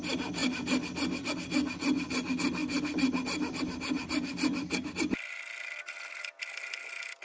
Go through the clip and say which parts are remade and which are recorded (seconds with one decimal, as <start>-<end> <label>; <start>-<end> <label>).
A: 0.0-7.2 recorded